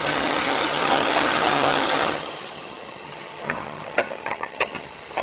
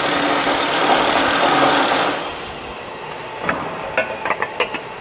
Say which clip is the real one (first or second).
second